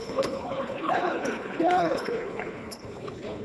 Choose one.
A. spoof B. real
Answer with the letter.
A